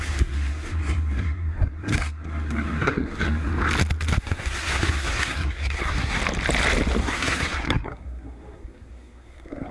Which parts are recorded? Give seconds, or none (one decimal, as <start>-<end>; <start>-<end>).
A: 3.5-4.2; 6.2-7.0